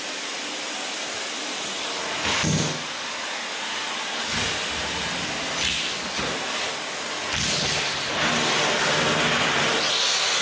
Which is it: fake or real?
real